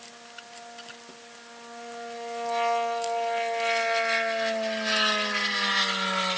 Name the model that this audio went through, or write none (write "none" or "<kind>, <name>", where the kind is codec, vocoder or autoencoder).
none